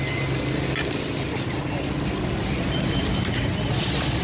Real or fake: real